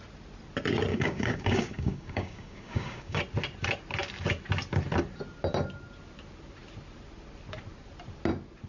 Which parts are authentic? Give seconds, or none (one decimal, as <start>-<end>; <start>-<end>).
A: 0.0-0.9; 3.2-8.7